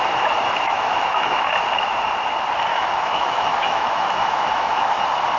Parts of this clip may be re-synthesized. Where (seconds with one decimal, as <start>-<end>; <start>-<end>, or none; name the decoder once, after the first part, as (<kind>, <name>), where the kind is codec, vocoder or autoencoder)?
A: 0.7-1.5 (autoencoder, DAC-VAE); 2.7-5.0